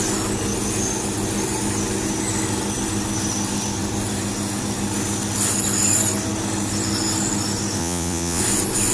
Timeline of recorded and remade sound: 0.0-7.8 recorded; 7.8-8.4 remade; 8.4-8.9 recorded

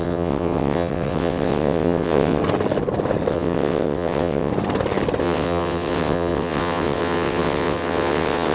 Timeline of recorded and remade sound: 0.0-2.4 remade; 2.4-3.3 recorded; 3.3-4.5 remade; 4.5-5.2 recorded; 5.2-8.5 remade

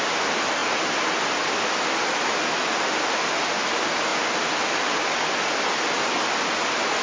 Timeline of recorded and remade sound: 0.0-7.0 recorded

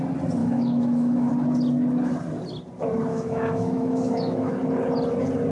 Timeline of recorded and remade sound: 0.0-0.4 recorded; 0.4-1.3 remade; 1.3-3.1 recorded; 3.1-4.5 remade; 4.5-5.5 recorded

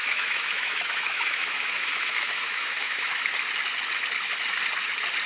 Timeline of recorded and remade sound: 0.0-3.2 remade; 3.2-5.3 recorded